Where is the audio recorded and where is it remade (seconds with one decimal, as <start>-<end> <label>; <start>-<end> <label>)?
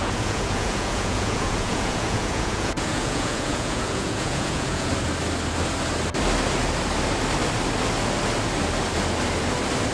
0.0-4.9 remade; 4.9-9.9 recorded